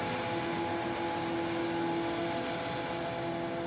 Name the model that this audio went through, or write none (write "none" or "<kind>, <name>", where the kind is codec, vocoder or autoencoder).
none